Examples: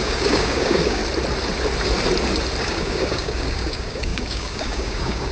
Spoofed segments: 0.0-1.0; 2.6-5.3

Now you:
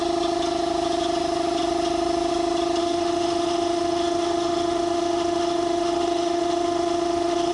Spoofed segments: 2.8-7.5

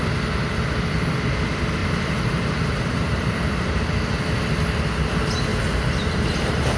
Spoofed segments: 1.8-3.8; 5.5-6.8